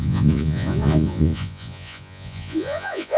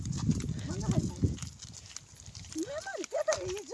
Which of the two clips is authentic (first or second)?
second